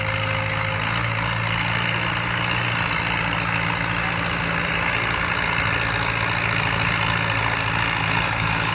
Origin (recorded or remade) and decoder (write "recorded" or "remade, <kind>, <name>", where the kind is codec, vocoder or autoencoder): recorded